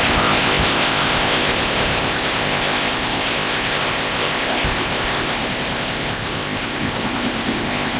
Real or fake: fake